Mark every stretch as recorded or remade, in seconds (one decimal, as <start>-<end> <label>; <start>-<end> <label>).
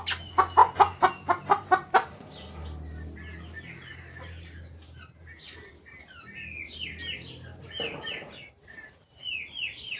0.0-10.0 recorded